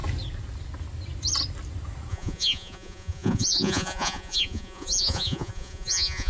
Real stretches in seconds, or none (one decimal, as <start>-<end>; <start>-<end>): 0.0-2.1